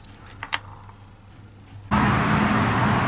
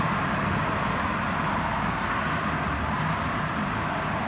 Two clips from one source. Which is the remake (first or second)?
second